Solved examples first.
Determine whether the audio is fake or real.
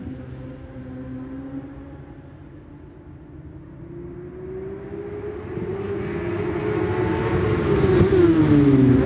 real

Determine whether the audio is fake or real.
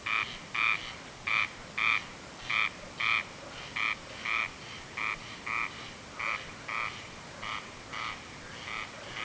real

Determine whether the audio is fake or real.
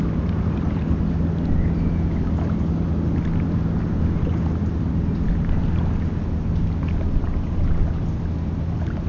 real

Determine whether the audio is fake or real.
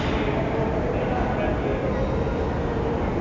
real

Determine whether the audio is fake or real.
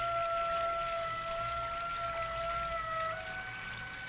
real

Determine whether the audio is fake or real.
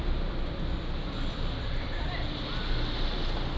real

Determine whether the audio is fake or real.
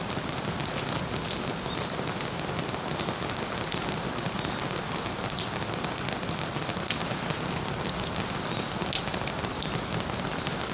real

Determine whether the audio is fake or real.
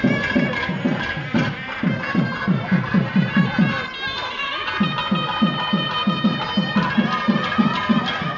real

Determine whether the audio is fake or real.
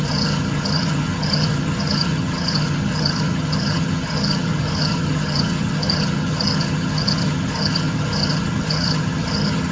fake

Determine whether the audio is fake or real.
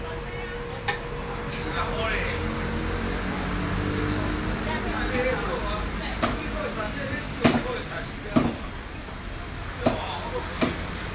real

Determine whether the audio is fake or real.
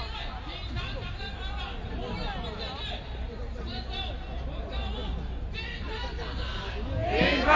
real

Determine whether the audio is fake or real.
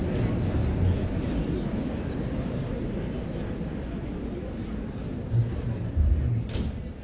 real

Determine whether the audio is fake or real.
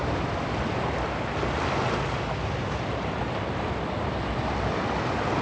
real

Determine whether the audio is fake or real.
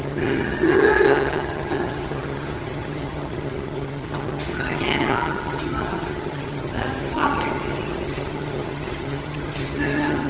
fake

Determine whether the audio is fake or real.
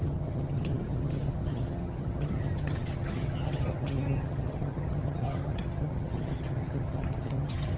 fake